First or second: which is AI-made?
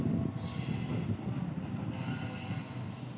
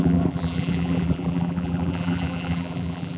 second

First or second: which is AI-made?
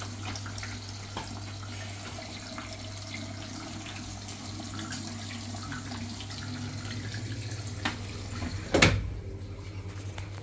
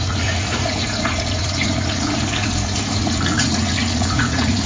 second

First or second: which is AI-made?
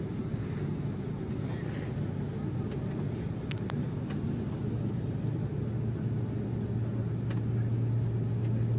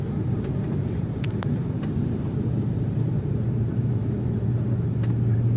second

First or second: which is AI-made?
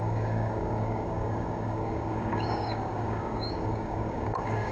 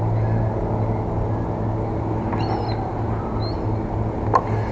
first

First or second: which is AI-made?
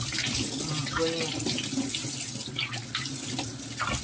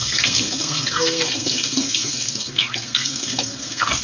second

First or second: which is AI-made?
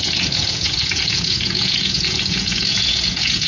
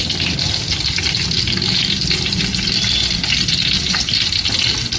first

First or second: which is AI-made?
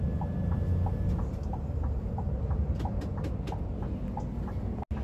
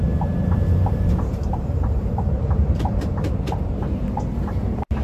second